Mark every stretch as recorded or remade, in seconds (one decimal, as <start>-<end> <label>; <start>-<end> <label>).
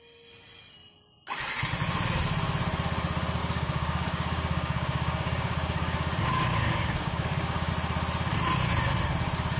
0.0-3.4 recorded; 3.4-7.7 remade; 7.7-9.6 recorded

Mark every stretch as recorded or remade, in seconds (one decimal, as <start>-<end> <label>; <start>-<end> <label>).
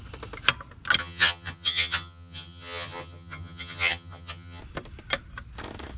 0.0-1.0 recorded; 1.0-4.6 remade; 4.6-6.0 recorded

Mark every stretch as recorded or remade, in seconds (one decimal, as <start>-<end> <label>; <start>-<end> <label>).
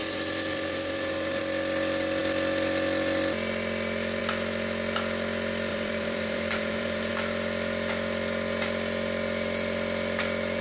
0.0-1.4 remade; 1.4-5.7 recorded; 5.7-7.1 remade; 7.1-10.6 recorded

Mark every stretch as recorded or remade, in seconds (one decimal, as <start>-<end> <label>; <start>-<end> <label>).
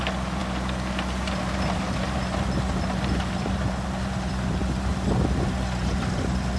0.0-6.6 remade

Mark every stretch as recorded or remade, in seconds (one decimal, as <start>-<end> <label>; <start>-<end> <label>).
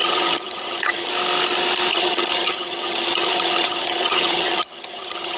0.0-1.1 remade; 1.1-1.9 recorded; 1.9-5.4 remade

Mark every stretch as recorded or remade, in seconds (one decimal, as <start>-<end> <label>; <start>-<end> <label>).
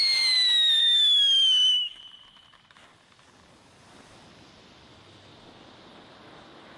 0.0-0.8 recorded; 0.8-2.0 remade; 2.0-6.8 recorded